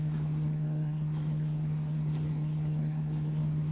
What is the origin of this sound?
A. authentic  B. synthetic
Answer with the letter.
B